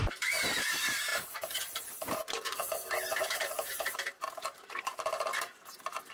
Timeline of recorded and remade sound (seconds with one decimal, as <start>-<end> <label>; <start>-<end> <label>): 0.0-5.3 remade; 5.3-6.1 recorded